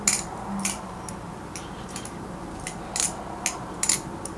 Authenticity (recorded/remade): recorded